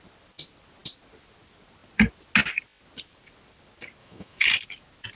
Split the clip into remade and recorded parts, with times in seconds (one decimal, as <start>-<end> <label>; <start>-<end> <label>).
0.0-4.0 recorded; 4.0-4.5 remade; 4.5-5.1 recorded